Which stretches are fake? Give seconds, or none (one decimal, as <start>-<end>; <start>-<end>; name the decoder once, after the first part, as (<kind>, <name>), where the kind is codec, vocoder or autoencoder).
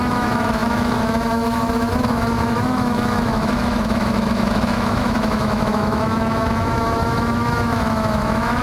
0.0-8.6 (autoencoder, DAC-VAE)